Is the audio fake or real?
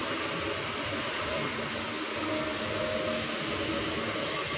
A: real